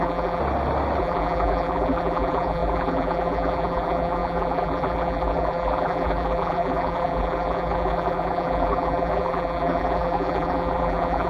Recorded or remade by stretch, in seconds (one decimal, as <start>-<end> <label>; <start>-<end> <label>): 0.0-0.4 remade; 0.4-1.0 recorded; 1.0-11.3 remade